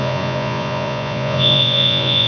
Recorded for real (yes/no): no